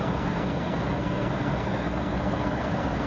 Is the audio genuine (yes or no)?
no